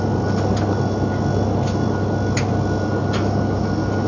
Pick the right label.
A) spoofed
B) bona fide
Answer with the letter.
B